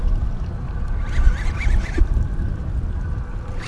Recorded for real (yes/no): yes